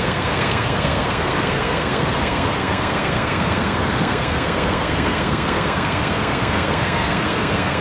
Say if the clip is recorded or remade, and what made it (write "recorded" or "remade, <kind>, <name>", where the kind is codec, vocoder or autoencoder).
remade, codec, SNAC